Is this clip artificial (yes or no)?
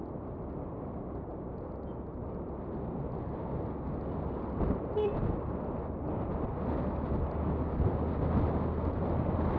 no